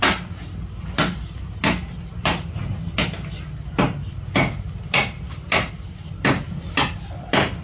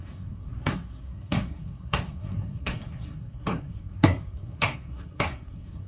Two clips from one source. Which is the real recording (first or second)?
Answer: first